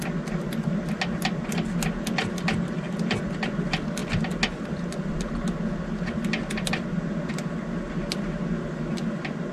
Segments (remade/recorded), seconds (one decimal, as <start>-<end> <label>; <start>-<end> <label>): 0.0-9.5 recorded